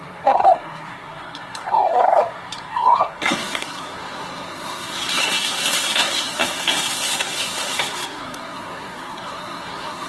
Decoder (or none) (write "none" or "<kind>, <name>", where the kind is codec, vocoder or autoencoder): codec, SNAC